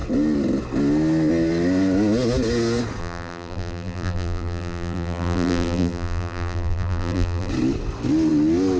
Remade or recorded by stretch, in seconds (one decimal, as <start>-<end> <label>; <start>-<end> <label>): 0.0-3.0 recorded; 3.0-7.5 remade; 7.5-8.8 recorded